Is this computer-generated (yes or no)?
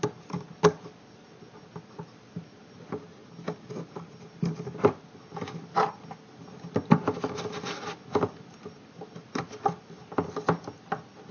no